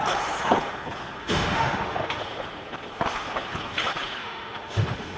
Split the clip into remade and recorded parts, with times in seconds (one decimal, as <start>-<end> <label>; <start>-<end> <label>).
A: 0.0-1.2 recorded; 1.2-2.2 remade; 2.2-4.2 recorded; 4.2-5.2 remade